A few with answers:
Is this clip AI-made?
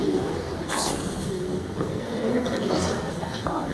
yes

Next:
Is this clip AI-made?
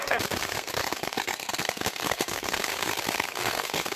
yes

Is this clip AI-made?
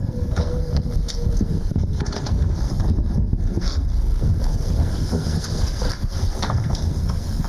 yes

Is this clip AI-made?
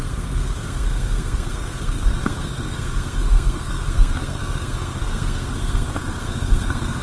yes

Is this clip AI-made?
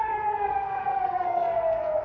yes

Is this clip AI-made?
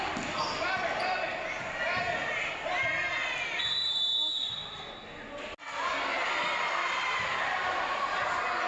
no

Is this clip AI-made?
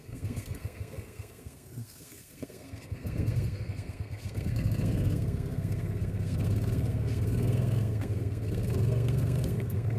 yes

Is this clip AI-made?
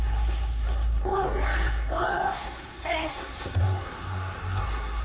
yes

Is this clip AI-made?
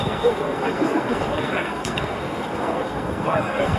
yes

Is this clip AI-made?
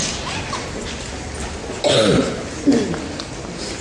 no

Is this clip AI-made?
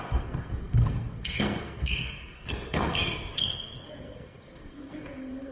yes